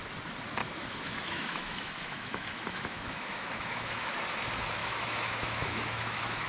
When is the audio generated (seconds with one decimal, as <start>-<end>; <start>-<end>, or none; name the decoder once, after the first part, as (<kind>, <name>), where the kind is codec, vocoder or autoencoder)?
0.6-4.1 (autoencoder, DAC-VAE); 4.8-6.5